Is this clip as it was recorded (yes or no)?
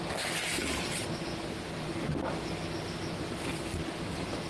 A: yes